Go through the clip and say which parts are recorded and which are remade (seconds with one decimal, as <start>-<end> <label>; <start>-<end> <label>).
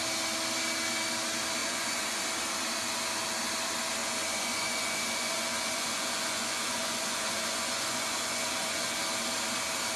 0.0-1.6 recorded; 1.6-2.2 remade; 2.2-4.0 recorded; 4.0-9.0 remade; 9.0-10.0 recorded